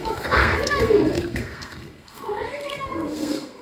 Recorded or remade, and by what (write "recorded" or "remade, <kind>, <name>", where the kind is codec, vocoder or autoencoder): remade, codec, SNAC